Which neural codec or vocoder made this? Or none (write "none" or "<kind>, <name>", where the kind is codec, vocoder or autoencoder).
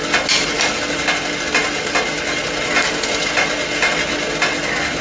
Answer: none